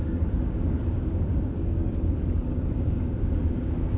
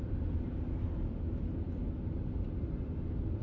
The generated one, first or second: first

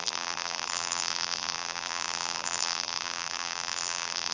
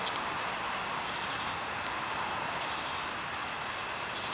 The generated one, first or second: first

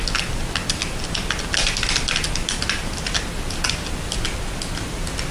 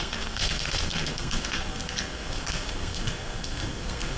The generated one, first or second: second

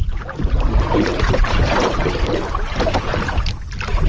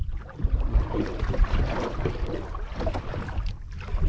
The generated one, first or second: first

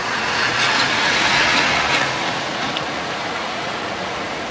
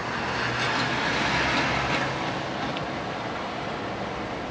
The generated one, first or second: first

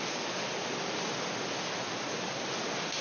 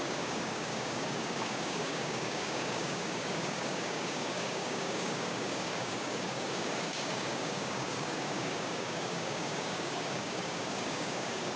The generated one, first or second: second